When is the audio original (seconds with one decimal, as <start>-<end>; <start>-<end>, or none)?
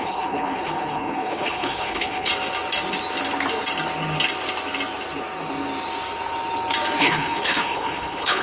2.3-7.0